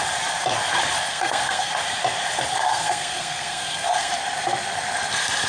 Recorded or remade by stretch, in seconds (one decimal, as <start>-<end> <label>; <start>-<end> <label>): 0.0-1.1 recorded; 1.1-1.7 remade; 1.7-2.5 recorded; 2.5-4.1 remade; 4.1-5.5 recorded